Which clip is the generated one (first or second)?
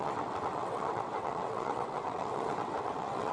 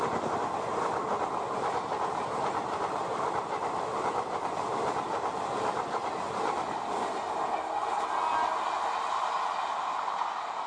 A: first